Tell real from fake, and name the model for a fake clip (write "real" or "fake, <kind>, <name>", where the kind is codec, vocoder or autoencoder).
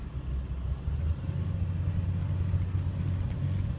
real